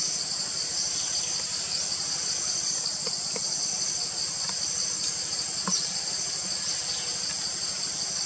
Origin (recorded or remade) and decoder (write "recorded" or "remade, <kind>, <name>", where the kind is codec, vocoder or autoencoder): recorded